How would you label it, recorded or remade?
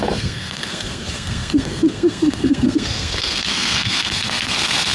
remade